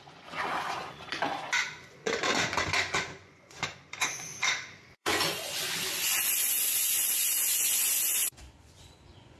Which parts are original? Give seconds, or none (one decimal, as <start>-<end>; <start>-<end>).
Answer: 4.3-4.8